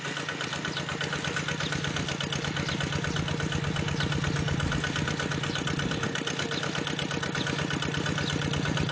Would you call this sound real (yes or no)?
yes